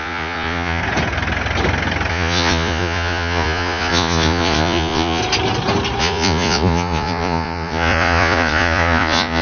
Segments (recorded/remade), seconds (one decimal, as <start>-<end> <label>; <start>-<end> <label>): 0.0-0.8 remade; 0.8-2.1 recorded; 2.1-5.2 remade; 5.2-6.0 recorded; 6.0-9.4 remade